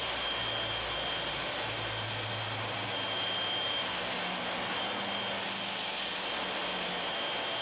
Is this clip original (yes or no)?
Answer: yes